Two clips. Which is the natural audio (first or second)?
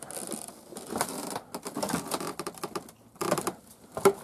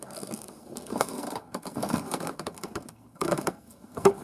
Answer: first